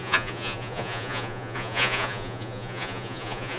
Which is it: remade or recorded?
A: remade